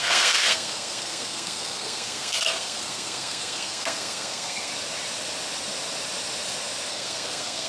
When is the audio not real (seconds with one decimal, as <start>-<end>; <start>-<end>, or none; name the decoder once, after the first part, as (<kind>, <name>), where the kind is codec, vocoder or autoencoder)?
0.0-4.7 (codec, SNAC); 6.9-7.7